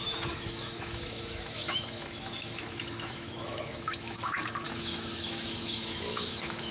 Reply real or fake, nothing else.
fake